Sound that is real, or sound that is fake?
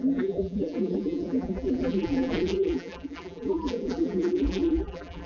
fake